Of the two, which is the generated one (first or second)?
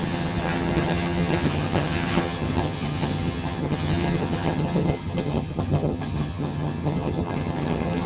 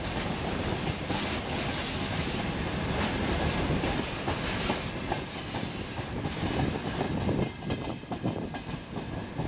first